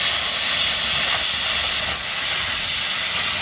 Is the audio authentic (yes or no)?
yes